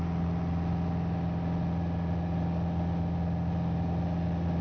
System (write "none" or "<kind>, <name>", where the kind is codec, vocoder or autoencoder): none